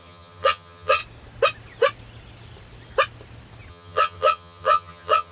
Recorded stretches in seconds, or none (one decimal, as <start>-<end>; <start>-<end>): 1.0-3.7